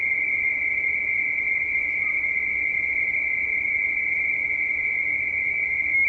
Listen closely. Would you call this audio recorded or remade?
recorded